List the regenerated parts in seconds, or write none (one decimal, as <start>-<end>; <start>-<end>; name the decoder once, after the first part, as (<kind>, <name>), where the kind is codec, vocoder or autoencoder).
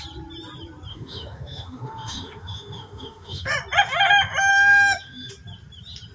0.9-3.5 (autoencoder, DAC-VAE); 4.5-5.3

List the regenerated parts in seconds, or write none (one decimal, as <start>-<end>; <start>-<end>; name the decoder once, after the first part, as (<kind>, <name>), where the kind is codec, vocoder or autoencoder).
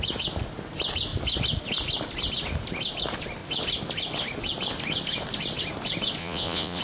6.2-6.8 (vocoder, Vocos)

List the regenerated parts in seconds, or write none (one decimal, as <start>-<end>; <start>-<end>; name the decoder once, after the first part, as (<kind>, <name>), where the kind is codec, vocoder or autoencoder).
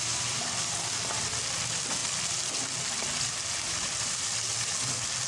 none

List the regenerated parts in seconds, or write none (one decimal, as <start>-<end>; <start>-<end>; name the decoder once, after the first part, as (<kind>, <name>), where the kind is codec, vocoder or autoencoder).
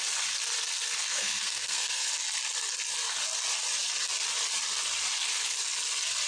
1.0-2.1 (codec, SNAC)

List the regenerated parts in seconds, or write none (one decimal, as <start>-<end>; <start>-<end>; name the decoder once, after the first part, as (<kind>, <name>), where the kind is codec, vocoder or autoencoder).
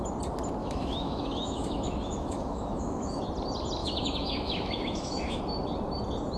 0.6-3.2 (autoencoder, DAC-VAE); 3.8-5.4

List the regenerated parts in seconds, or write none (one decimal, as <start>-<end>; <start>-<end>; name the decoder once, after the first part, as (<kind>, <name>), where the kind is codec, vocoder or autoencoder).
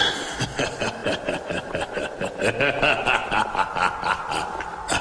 none